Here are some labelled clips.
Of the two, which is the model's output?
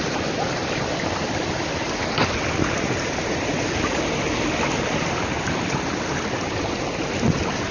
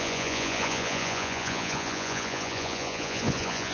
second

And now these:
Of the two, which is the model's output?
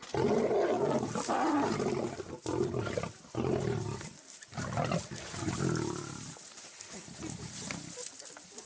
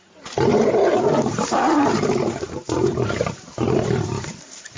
second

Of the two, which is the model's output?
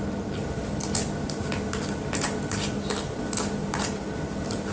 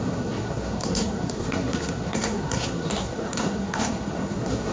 second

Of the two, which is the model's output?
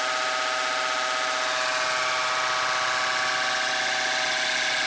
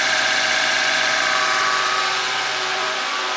second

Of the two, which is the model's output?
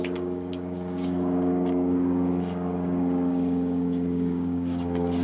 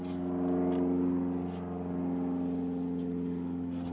first